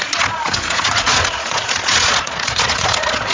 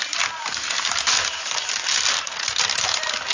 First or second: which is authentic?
second